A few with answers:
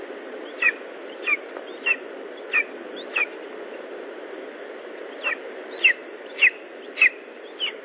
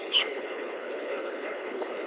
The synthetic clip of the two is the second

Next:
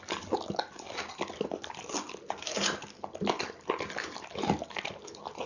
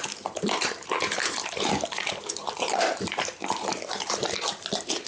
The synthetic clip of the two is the second